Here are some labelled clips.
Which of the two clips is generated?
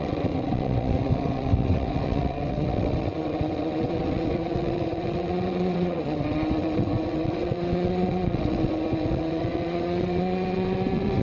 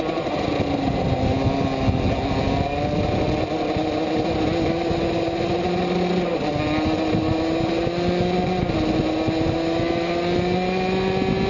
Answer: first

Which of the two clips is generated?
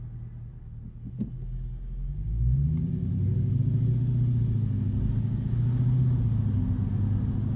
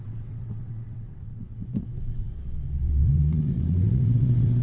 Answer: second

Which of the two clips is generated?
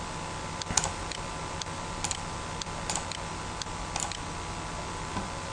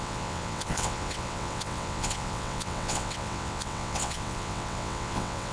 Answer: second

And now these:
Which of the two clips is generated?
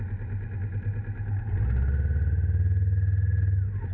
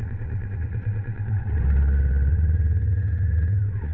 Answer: second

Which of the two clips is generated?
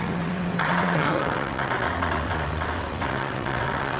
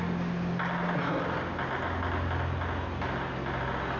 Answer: first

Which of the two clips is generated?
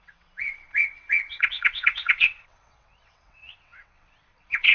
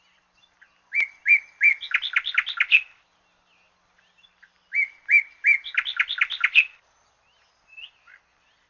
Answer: first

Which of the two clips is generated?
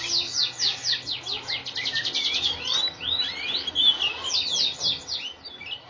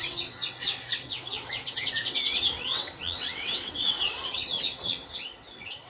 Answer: second